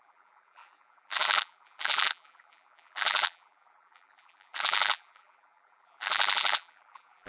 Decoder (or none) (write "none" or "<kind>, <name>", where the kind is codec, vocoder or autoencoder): vocoder, BigVGAN v2